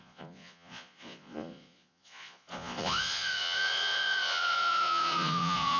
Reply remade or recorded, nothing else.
remade